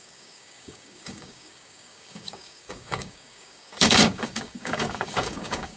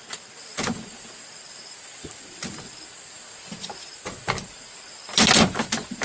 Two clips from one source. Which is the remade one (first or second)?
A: first